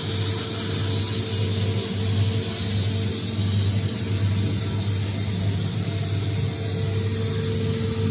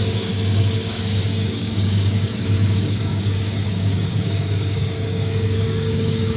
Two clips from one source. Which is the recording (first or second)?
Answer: first